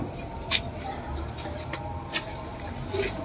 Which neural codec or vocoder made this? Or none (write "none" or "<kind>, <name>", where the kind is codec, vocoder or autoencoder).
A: vocoder, BigVGAN v2